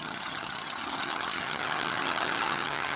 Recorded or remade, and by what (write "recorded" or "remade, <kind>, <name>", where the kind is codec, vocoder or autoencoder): remade, vocoder, HiFi-GAN